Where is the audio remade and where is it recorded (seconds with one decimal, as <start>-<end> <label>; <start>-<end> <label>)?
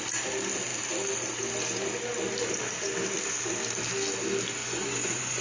0.0-4.6 recorded; 4.6-5.4 remade